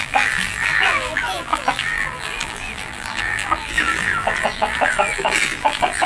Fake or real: fake